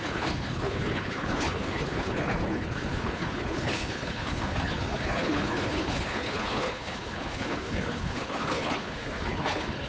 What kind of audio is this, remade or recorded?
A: remade